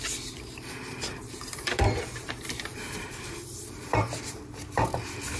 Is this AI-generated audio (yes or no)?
yes